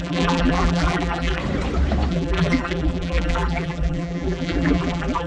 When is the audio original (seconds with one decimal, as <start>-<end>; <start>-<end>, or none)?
1.4-2.1